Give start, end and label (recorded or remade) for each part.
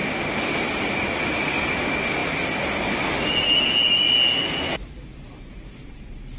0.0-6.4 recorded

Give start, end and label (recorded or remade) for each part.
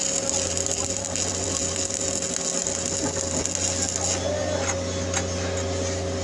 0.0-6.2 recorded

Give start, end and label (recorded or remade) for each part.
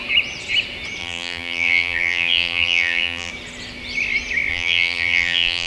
0.0-1.0 recorded; 1.0-3.3 remade; 3.3-4.5 recorded; 4.5-5.7 remade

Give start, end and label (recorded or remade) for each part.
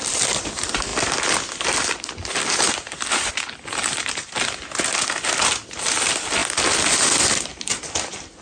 0.0-6.4 remade; 6.4-8.4 recorded